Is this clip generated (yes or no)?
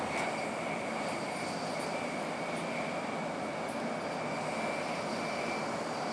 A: no